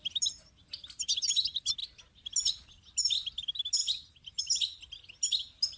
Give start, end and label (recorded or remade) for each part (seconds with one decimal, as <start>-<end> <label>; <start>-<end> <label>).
0.0-5.8 recorded